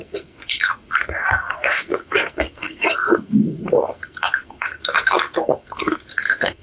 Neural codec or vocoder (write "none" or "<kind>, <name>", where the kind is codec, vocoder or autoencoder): codec, SNAC